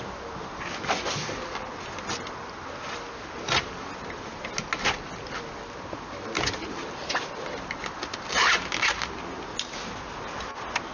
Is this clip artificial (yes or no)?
no